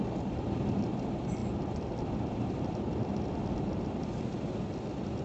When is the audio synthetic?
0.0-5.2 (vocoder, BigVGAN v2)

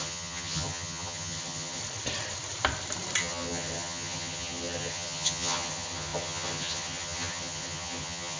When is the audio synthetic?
0.0-1.8 (vocoder, HiFi-GAN); 3.2-8.4

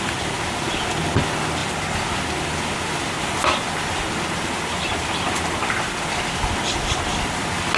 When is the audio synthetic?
none

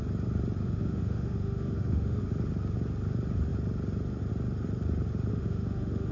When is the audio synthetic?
0.6-2.3 (autoencoder, DAC-VAE); 5.3-6.1

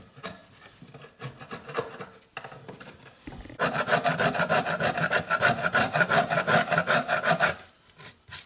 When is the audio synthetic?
none

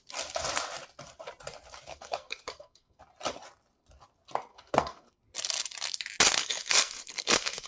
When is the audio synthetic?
1.9-3.0 (codec, SNAC); 4.5-5.2; 6.4-7.7